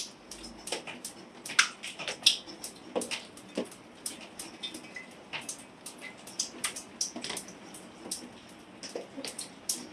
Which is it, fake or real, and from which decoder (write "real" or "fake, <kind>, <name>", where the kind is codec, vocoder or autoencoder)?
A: real